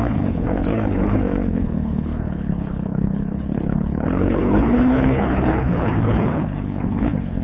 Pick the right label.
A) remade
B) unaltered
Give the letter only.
A